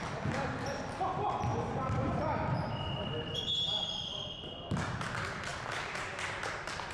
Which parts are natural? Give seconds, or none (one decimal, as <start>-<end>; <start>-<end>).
0.0-1.5; 3.5-5.5; 6.1-6.9